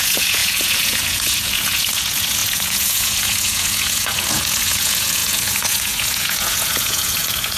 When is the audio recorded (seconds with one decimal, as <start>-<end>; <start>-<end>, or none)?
none